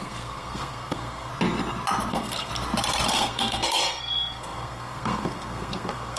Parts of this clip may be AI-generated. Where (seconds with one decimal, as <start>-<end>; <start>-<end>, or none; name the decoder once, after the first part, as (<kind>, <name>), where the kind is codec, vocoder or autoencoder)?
0.0-1.3 (codec, SNAC); 2.1-2.5; 3.1-6.2